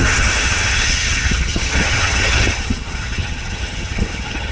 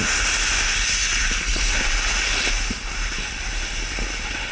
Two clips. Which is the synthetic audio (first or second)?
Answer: first